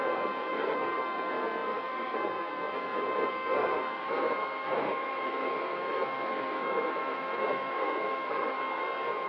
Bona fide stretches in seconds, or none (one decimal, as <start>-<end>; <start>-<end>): none